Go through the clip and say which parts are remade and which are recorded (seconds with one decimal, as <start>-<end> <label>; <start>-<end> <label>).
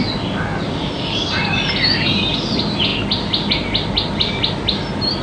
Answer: 0.0-0.5 recorded; 0.5-1.3 remade; 1.3-5.2 recorded